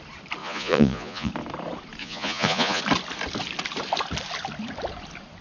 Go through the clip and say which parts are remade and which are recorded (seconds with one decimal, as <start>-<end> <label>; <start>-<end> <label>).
0.0-0.4 recorded; 0.4-1.3 remade; 1.3-2.0 recorded; 2.0-2.8 remade; 2.8-5.4 recorded